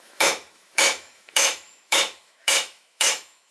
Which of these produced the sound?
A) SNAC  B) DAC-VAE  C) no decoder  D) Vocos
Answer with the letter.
B